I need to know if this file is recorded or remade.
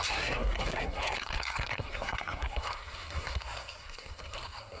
remade